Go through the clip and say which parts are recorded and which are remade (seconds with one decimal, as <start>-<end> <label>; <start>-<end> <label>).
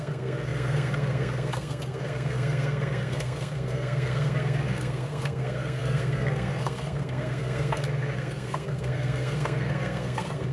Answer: 0.0-10.5 remade